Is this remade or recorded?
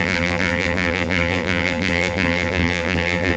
remade